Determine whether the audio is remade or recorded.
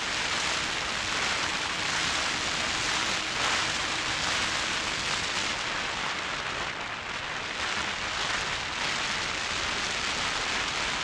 recorded